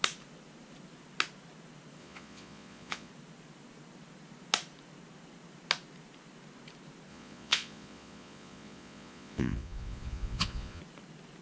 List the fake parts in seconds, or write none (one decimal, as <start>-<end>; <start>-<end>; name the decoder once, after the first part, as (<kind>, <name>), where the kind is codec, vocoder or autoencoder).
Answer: 2.0-3.1 (vocoder, Vocos); 7.1-10.8

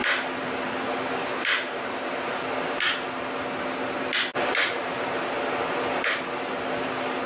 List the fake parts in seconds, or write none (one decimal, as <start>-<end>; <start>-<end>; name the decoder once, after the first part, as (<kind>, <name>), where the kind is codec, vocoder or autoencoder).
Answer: 0.0-0.7 (vocoder, BigVGAN v2); 1.2-2.4; 4.3-5.1